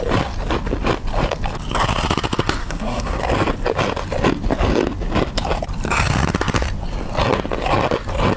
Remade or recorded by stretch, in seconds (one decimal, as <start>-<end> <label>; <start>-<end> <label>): 0.0-2.6 recorded; 2.6-3.2 remade; 3.2-8.4 recorded